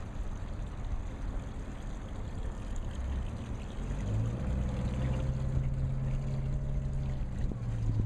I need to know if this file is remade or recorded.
recorded